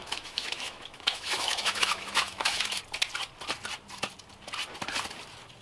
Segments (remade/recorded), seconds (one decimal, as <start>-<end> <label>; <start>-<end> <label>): 0.0-2.8 remade; 2.8-5.6 recorded